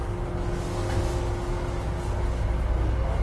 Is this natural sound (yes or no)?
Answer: yes